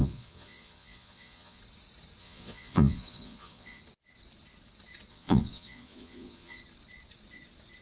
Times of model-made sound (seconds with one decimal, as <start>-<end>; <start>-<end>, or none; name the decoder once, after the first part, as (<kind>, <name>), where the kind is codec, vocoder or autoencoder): 0.0-1.6 (vocoder, Vocos); 2.2-3.8; 5.1-6.6